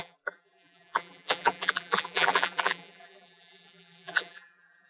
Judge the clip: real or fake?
fake